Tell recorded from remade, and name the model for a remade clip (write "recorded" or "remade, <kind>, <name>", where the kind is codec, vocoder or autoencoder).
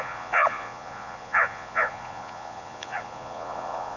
remade, vocoder, Vocos